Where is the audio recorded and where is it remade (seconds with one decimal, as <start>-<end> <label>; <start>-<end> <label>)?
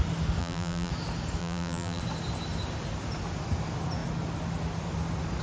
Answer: 0.0-0.4 recorded; 0.4-0.9 remade; 0.9-1.4 recorded; 1.4-2.0 remade; 2.0-5.4 recorded